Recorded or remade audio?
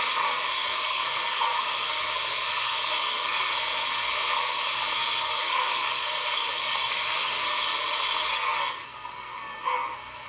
remade